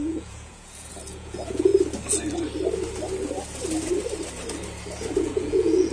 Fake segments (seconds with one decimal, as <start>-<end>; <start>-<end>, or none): 0.0-1.7; 5.2-5.9